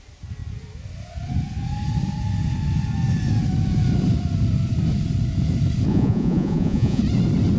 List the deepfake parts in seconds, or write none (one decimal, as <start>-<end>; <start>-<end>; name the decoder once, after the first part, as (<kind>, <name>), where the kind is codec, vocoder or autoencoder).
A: 5.9-7.0 (vocoder, Vocos)

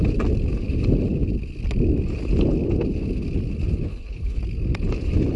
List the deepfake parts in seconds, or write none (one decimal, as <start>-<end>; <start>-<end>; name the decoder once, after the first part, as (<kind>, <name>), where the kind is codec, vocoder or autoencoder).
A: 3.9-4.4 (codec, HILCodec)

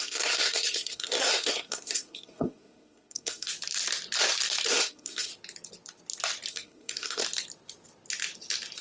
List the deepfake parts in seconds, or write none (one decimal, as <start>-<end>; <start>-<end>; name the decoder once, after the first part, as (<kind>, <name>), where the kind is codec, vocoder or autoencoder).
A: 0.0-3.5 (codec, SNAC); 4.7-5.3; 6.5-7.2

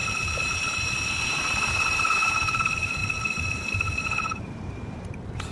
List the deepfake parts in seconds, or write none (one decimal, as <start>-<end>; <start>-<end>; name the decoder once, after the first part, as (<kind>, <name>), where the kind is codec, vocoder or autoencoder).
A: 1.3-3.0 (vocoder, BigVGAN v2); 4.0-5.5

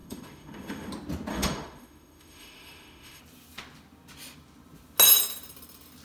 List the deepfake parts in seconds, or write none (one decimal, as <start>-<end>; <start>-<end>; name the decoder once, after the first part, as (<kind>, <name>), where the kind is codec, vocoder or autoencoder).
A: 0.0-0.9 (autoencoder, DAC-VAE); 1.3-3.2